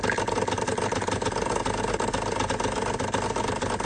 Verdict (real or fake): real